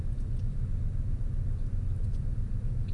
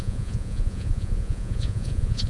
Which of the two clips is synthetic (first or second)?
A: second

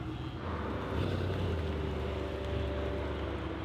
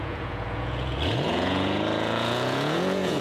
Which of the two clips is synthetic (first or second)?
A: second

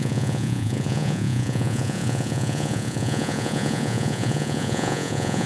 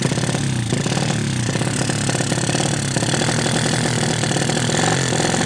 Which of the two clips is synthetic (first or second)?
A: first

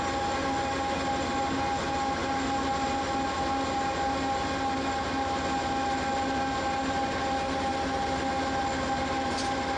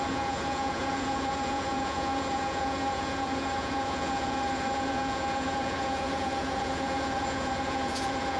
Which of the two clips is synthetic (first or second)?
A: second